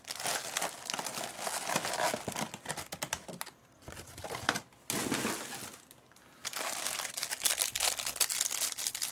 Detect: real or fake real